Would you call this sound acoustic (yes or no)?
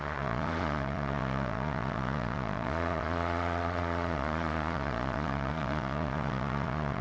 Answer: no